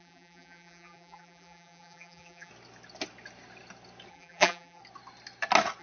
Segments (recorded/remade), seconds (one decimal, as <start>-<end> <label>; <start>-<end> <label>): 0.0-2.5 remade; 2.5-4.1 recorded; 4.1-4.8 remade; 4.8-5.8 recorded